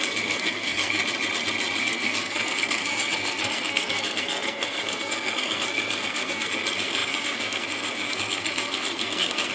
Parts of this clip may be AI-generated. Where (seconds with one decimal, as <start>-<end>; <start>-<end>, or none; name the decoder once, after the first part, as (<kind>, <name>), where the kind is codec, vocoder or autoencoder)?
0.0-1.0 (codec, SNAC); 1.8-9.5